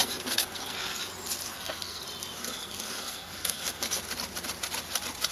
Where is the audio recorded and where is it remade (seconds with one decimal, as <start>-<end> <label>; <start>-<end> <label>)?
0.0-1.0 remade; 1.0-1.5 recorded; 1.5-2.0 remade; 2.0-2.4 recorded; 2.4-4.0 remade; 4.0-5.3 recorded